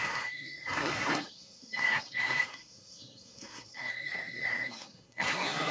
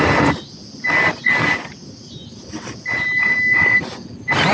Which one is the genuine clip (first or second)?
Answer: second